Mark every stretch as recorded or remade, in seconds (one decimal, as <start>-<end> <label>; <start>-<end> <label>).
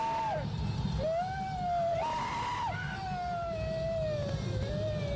0.0-5.2 recorded